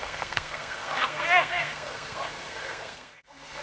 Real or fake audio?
fake